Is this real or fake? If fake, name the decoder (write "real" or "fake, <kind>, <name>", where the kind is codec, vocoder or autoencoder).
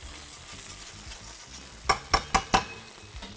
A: real